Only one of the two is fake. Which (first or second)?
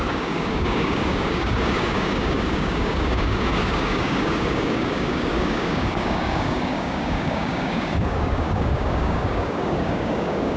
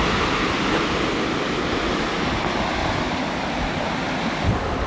first